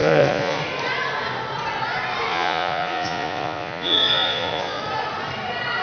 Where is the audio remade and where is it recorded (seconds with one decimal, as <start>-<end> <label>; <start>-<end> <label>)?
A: 0.0-0.6 remade; 0.6-2.3 recorded; 2.3-4.8 remade; 4.8-5.8 recorded